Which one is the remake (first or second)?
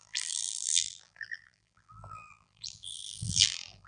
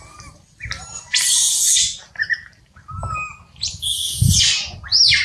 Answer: first